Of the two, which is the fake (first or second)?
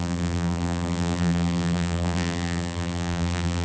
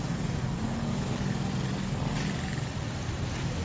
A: first